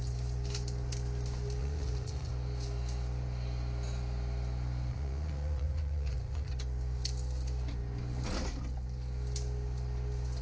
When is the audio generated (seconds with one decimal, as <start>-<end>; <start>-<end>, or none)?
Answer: 1.6-2.3; 4.9-6.5